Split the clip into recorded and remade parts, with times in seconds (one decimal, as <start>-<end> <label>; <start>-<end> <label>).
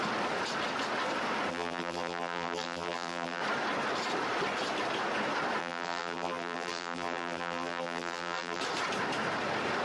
0.0-1.5 recorded; 1.5-3.4 remade; 3.4-5.6 recorded; 5.6-8.6 remade; 8.6-9.8 recorded